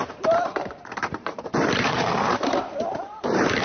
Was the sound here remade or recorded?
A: remade